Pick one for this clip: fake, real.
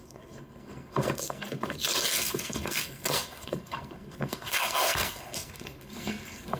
fake